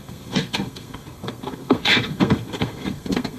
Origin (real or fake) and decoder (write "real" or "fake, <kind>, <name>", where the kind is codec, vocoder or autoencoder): fake, codec, SNAC